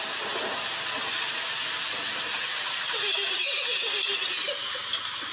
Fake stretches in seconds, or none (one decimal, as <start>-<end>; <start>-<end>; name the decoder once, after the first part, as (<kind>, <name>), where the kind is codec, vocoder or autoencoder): none